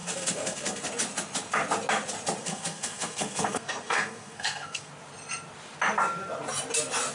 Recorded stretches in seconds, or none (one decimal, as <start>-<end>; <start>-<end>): 0.9-2.4; 4.9-7.1